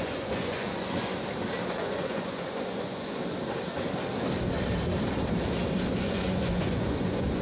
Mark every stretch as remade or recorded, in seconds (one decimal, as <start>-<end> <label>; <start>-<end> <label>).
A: 0.0-1.1 remade; 1.1-1.7 recorded; 1.7-3.2 remade; 3.2-5.9 recorded; 5.9-7.4 remade